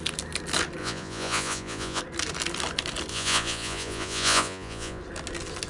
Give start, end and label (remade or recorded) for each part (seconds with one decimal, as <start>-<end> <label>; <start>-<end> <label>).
0.0-0.8 recorded; 0.8-2.0 remade; 2.0-3.1 recorded; 3.1-5.0 remade; 5.0-5.7 recorded